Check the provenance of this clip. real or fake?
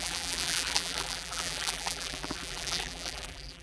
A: fake